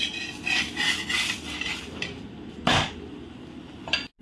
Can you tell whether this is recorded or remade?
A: recorded